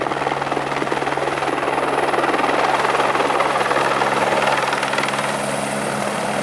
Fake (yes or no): no